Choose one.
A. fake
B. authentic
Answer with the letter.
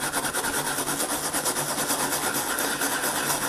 B